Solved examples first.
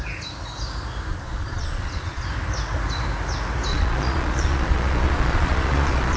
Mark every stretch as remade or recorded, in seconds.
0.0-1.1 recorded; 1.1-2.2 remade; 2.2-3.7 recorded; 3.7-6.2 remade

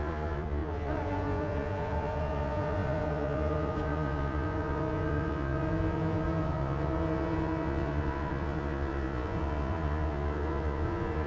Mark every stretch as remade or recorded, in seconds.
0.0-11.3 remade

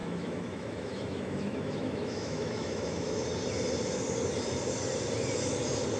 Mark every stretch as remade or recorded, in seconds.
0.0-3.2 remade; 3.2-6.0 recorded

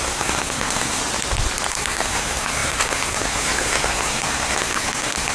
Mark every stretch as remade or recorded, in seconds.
0.0-1.0 remade; 1.0-1.7 recorded; 1.7-5.3 remade

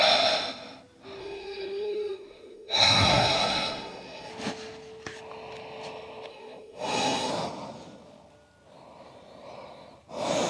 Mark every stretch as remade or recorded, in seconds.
0.0-1.2 recorded; 1.2-4.3 remade; 4.3-6.3 recorded; 6.3-7.3 remade; 7.3-10.5 recorded

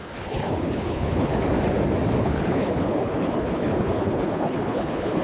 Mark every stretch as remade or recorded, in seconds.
0.0-1.3 remade; 1.3-2.2 recorded; 2.2-5.2 remade

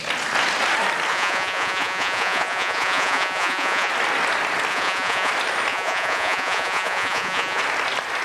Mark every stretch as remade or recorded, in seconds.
0.0-1.1 recorded; 1.1-3.9 remade; 3.9-4.7 recorded; 4.7-5.3 remade; 5.3-5.7 recorded; 5.7-7.6 remade; 7.6-8.2 recorded

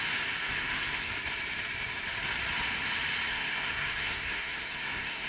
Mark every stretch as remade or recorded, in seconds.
0.0-0.4 recorded; 0.4-1.1 remade; 1.1-3.3 recorded; 3.3-5.3 remade